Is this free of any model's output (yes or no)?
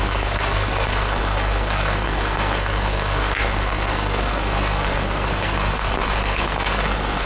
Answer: no